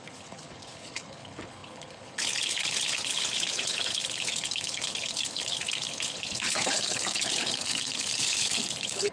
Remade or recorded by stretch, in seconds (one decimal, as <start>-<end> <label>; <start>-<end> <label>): 0.0-9.1 remade